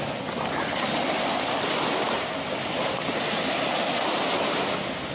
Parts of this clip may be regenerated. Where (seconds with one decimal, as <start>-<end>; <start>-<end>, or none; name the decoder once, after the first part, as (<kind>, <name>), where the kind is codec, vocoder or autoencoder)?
none